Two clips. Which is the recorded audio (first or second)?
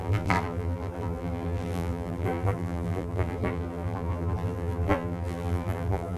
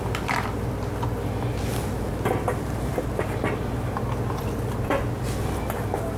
second